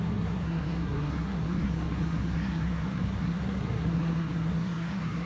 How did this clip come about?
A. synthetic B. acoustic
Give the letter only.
A